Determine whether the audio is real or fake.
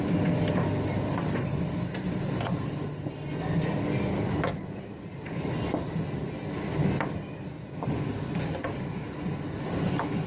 real